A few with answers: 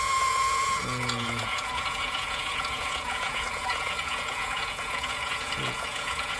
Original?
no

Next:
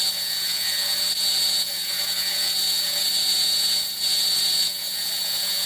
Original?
no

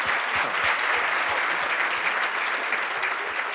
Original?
yes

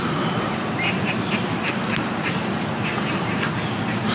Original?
yes